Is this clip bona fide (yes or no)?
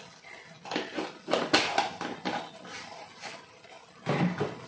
yes